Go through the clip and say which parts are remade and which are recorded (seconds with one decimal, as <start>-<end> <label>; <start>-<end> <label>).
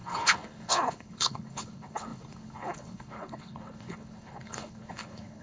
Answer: 0.0-5.4 remade